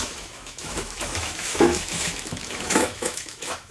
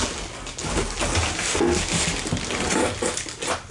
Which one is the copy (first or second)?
first